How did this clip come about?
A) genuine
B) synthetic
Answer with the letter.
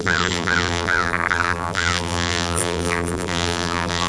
B